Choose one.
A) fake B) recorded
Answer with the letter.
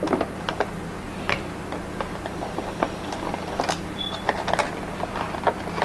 B